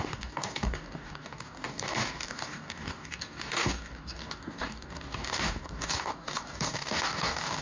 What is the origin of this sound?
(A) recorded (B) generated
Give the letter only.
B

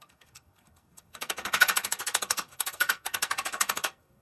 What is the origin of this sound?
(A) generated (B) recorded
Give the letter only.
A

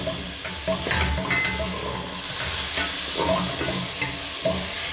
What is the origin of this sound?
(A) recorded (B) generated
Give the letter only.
A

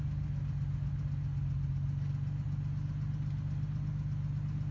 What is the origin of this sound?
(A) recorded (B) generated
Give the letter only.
A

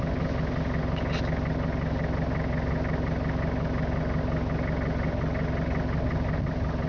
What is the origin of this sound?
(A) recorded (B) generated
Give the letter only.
A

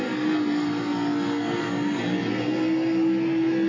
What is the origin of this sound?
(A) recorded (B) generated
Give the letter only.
A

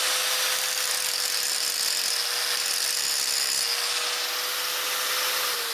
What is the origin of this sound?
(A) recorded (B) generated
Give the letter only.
A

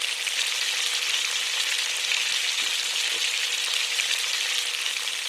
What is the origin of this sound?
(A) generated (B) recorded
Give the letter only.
B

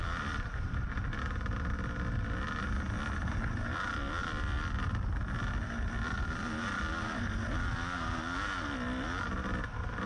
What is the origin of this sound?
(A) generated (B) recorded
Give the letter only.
B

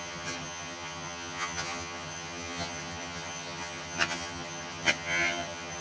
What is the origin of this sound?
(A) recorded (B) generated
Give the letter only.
B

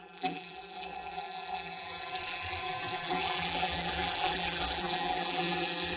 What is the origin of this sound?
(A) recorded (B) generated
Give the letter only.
B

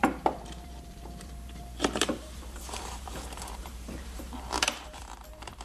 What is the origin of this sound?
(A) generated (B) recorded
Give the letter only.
A